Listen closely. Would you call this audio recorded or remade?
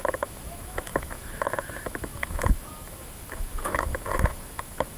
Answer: remade